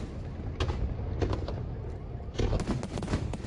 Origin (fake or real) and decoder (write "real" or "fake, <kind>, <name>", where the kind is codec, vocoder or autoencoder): real